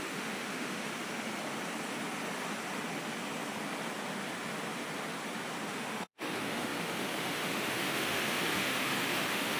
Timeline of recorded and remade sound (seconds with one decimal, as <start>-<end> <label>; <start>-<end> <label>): 0.0-0.9 remade; 0.9-5.7 recorded; 5.7-9.6 remade